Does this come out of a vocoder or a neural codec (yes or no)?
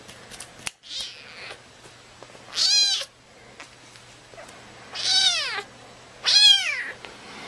no